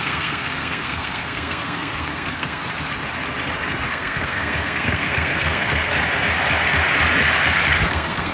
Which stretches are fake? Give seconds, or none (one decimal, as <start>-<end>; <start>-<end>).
0.0-2.6; 3.9-5.9; 7.9-8.3